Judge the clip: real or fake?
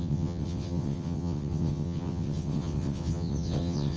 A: fake